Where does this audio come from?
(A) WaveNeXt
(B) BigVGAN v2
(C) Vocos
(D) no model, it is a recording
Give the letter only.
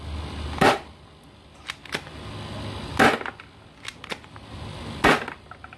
D